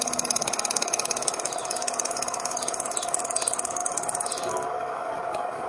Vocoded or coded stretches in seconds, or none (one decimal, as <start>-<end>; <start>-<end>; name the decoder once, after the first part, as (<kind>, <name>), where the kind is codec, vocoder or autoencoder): 0.0-5.7 (codec, DAC)